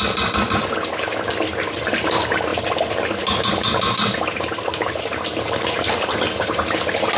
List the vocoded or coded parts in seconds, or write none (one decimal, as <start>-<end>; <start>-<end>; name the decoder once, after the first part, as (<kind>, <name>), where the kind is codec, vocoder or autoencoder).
none